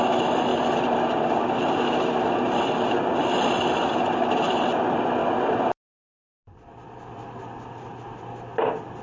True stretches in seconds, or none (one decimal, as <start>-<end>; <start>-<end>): 0.0-9.0